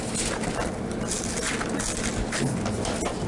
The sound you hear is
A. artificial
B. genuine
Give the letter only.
B